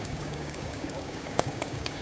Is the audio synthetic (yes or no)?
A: yes